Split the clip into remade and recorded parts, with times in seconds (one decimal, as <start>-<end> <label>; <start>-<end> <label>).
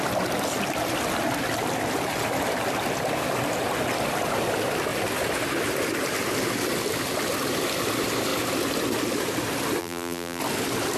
0.0-9.8 recorded; 9.8-10.4 remade; 10.4-11.0 recorded